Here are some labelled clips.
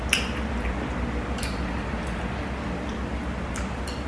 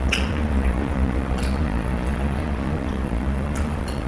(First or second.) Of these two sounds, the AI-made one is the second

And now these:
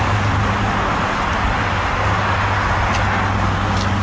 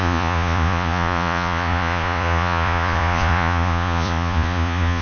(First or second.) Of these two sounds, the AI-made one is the second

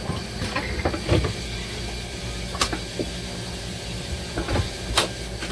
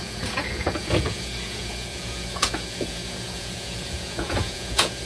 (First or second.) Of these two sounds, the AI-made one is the second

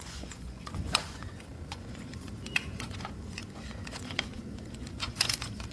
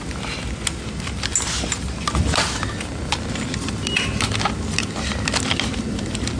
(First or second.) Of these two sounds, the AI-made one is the first